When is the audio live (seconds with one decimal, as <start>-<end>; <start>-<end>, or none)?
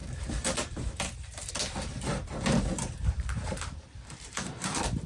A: 1.5-1.9